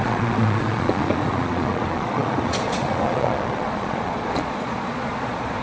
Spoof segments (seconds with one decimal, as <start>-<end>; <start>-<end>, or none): 0.0-5.6